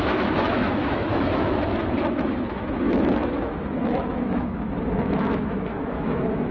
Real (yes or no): no